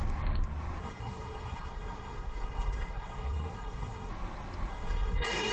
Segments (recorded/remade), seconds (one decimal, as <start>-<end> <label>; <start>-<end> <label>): 0.0-0.8 recorded; 0.8-4.1 remade; 4.1-4.7 recorded; 4.7-5.5 remade